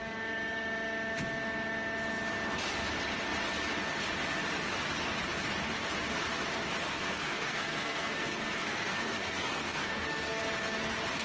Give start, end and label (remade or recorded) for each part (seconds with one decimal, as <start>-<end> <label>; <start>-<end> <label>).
0.0-6.8 recorded; 6.8-10.4 remade; 10.4-11.2 recorded